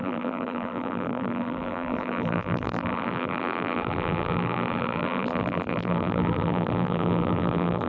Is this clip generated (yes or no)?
yes